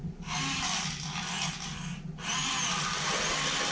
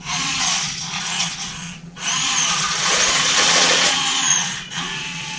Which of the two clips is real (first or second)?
first